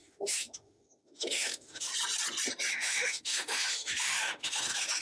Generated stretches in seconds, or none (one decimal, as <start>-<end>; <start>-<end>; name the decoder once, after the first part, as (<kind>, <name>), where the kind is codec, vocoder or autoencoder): 0.0-1.9 (autoencoder, DAC-VAE); 2.7-5.0